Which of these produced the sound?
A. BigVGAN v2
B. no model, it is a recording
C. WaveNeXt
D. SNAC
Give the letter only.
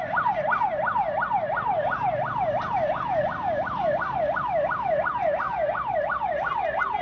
B